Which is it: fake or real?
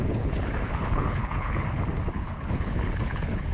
fake